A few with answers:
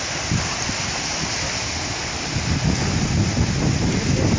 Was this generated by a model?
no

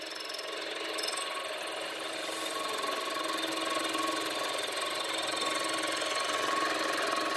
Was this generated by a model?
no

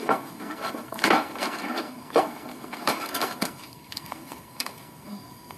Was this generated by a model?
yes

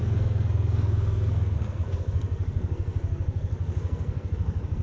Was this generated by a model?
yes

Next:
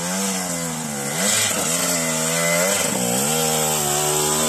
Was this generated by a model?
no